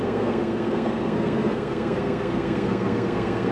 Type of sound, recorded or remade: remade